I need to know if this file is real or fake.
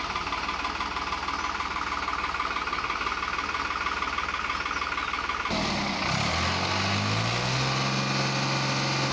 real